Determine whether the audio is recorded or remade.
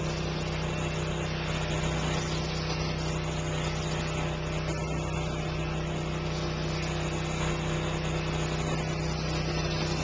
recorded